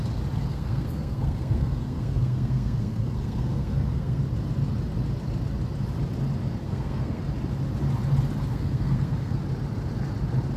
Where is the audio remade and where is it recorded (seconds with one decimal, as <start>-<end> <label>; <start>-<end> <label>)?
0.0-0.5 recorded; 0.5-4.2 remade; 4.2-6.6 recorded; 6.6-7.2 remade; 7.2-8.5 recorded; 8.5-9.4 remade; 9.4-10.6 recorded

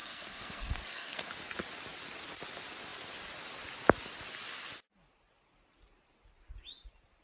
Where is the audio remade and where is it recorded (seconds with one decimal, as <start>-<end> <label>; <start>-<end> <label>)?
0.0-1.3 remade; 1.3-7.2 recorded

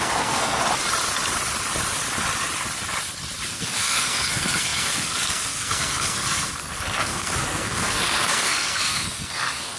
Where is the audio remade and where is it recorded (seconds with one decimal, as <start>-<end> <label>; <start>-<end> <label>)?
0.0-0.6 remade; 0.6-3.5 recorded; 3.5-9.8 remade

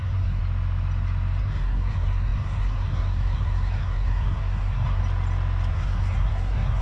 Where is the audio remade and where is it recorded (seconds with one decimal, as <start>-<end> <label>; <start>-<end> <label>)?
0.0-0.4 remade; 0.4-1.4 recorded; 1.4-5.0 remade; 5.0-5.7 recorded; 5.7-6.8 remade

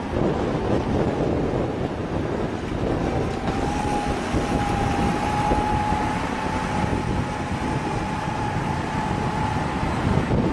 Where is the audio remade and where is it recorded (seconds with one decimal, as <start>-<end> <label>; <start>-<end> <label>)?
0.0-5.1 recorded; 5.1-5.9 remade; 5.9-10.5 recorded

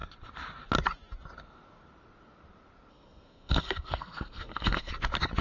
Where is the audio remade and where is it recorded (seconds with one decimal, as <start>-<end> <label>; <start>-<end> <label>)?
0.0-2.9 recorded; 2.9-4.9 remade; 4.9-5.4 recorded